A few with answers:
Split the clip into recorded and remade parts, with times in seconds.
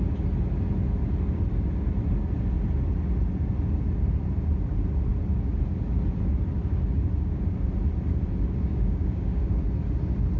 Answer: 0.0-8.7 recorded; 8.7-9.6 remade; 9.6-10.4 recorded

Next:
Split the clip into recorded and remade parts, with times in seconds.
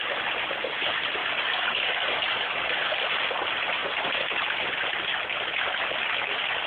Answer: 0.0-1.2 recorded; 1.2-3.1 remade; 3.1-6.7 recorded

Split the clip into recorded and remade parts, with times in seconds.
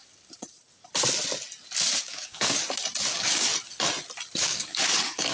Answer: 0.0-2.0 recorded; 2.0-2.6 remade; 2.6-3.1 recorded; 3.1-3.5 remade; 3.5-4.4 recorded; 4.4-5.3 remade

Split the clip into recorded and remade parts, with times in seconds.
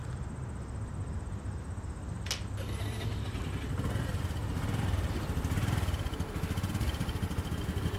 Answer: 0.0-8.0 recorded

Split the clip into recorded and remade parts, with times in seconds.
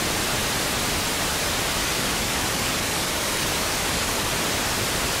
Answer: 0.0-1.8 recorded; 1.8-4.3 remade; 4.3-5.2 recorded